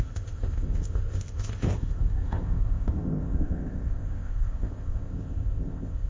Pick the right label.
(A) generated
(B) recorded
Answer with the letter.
A